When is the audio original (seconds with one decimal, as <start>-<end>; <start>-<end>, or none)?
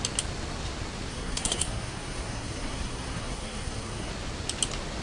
0.0-1.1; 4.1-5.0